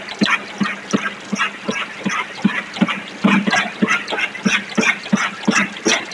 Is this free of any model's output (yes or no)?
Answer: yes